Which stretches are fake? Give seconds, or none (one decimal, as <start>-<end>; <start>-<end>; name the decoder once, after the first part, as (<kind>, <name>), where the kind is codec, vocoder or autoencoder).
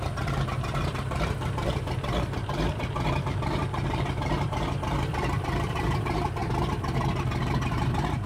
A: 0.0-6.4 (vocoder, BigVGAN v2); 7.4-8.3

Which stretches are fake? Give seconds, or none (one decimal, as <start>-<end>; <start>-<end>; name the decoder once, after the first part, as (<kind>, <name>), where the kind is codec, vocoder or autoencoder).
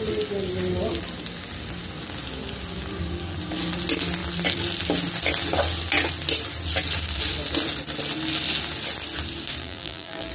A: 9.6-10.3 (vocoder, BigVGAN v2)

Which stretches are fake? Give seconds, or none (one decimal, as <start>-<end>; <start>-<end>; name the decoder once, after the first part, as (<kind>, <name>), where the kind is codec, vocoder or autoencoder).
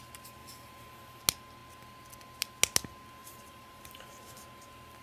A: 0.4-1.2 (vocoder, BigVGAN v2); 3.2-4.4